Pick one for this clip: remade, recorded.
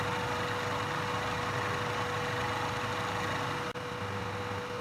recorded